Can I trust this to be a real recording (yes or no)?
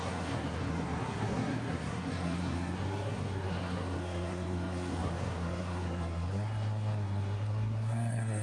no